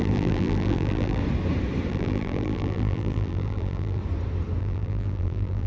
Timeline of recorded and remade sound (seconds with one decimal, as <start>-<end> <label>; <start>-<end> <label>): 0.0-1.2 remade; 1.2-1.9 recorded; 1.9-4.0 remade; 4.0-4.6 recorded; 4.6-5.7 remade